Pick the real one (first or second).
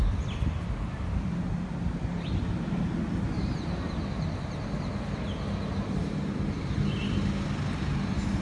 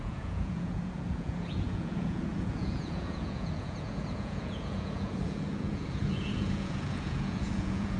first